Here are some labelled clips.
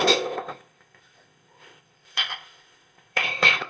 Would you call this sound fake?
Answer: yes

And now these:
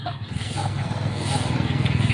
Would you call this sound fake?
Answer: yes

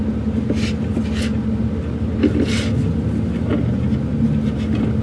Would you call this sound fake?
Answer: no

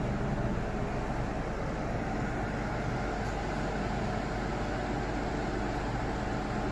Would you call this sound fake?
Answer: no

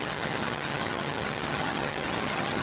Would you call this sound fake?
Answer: yes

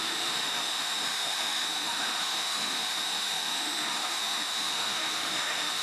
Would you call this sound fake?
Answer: yes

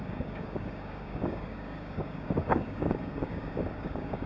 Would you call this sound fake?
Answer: yes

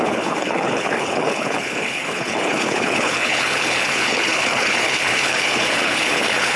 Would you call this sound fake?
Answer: yes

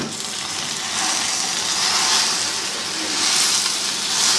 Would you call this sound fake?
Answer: no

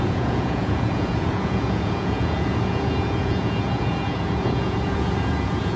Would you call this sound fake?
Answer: yes